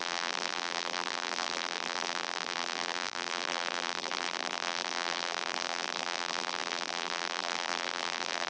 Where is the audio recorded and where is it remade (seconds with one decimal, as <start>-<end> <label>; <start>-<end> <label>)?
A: 0.0-8.5 remade